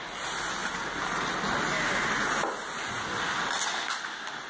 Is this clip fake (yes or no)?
no